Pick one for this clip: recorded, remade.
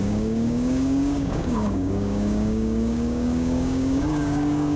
remade